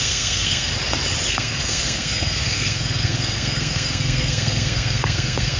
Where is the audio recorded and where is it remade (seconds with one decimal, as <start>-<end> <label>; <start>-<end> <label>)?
0.0-0.7 remade; 0.7-1.3 recorded; 1.3-5.6 remade